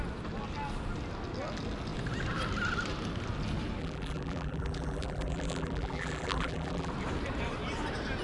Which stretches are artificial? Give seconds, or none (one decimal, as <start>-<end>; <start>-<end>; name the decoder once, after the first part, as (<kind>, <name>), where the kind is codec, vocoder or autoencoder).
3.8-6.9 (vocoder, BigVGAN v2)